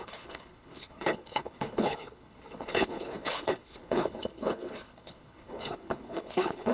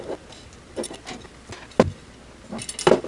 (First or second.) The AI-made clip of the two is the first